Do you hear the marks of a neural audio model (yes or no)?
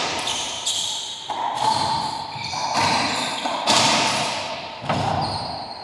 yes